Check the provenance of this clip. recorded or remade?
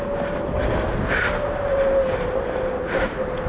recorded